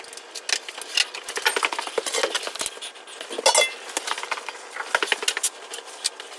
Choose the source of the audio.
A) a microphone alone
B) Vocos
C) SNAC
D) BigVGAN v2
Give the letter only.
A